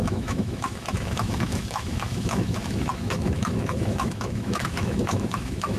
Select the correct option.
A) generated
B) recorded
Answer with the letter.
A